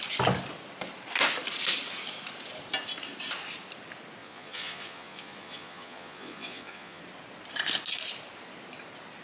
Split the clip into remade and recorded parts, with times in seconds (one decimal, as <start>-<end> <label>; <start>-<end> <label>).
0.0-4.2 recorded; 4.2-7.0 remade; 7.0-9.2 recorded